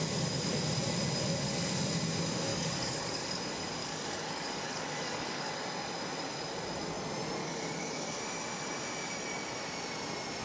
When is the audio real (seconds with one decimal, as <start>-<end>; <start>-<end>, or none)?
0.0-2.5; 3.4-3.8; 5.5-7.4; 8.2-10.4